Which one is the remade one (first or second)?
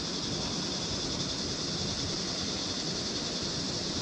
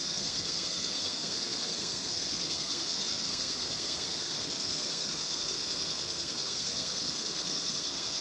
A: second